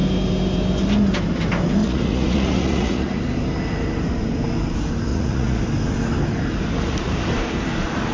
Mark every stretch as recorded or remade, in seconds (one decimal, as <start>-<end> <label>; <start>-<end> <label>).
0.0-1.8 recorded; 1.8-3.2 remade; 3.2-5.1 recorded; 5.1-5.6 remade; 5.6-8.1 recorded